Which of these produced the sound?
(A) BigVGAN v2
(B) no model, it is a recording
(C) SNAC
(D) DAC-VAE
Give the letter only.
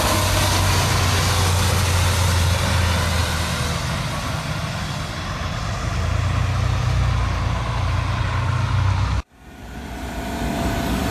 B